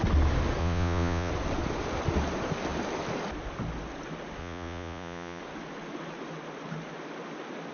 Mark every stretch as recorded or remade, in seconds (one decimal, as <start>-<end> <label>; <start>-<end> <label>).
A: 0.0-0.6 recorded; 0.6-1.3 remade; 1.3-4.4 recorded; 4.4-5.4 remade; 5.4-7.7 recorded